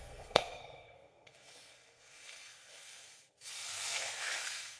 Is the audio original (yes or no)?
no